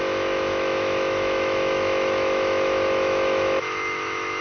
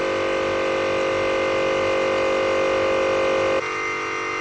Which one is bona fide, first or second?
second